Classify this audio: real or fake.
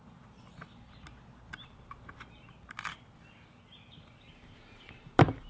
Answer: real